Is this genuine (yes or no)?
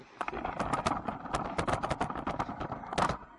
yes